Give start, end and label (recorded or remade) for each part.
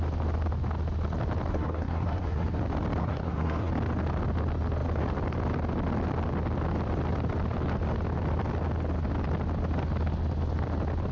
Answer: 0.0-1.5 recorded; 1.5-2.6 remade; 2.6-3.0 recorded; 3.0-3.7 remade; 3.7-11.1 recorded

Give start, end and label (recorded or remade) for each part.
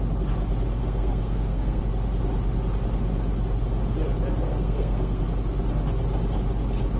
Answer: 0.0-0.8 recorded; 0.8-1.8 remade; 1.8-4.4 recorded; 4.4-5.2 remade; 5.2-7.0 recorded